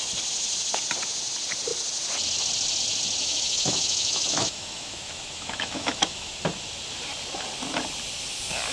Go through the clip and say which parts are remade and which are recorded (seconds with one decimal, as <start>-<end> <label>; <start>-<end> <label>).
0.0-3.2 recorded; 3.2-6.3 remade; 6.3-8.7 recorded